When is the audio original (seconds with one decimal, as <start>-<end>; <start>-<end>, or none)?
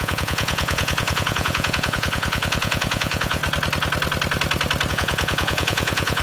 3.4-4.9